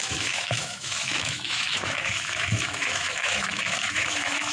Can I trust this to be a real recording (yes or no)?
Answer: no